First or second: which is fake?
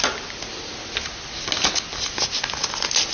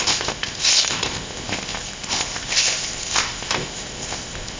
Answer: second